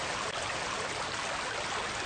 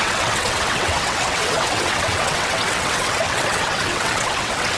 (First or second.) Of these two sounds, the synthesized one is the second